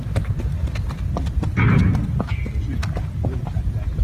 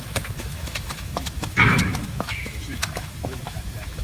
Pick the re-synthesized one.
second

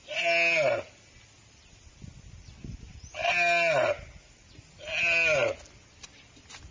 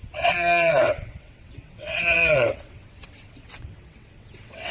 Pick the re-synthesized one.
second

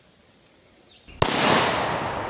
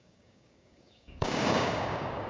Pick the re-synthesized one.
second